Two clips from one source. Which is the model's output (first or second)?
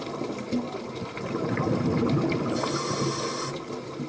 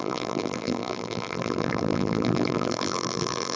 second